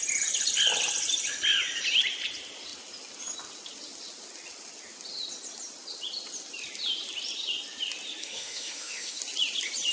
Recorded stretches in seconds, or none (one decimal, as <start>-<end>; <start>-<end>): 0.0-8.2; 9.2-9.9